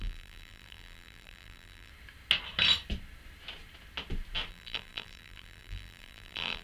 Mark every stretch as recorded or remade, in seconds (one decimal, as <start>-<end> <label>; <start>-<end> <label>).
0.0-1.9 remade; 1.9-4.5 recorded; 4.5-6.6 remade